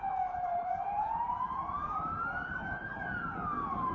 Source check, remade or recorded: recorded